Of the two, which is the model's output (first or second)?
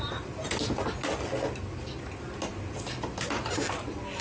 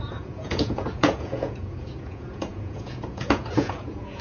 second